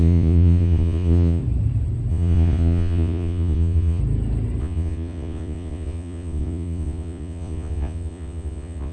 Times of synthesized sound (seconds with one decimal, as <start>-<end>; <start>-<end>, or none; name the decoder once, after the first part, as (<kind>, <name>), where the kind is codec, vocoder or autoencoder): 0.0-1.4 (vocoder, Vocos); 2.1-4.0; 4.6-8.9